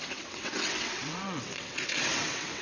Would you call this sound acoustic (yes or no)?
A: no